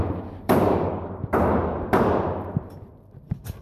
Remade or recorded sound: remade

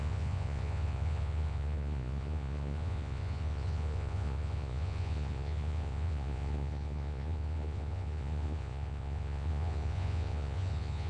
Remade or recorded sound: remade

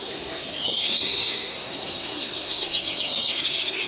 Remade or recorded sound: remade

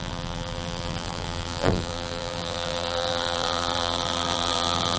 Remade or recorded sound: remade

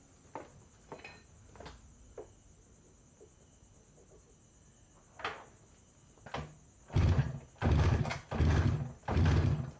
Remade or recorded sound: recorded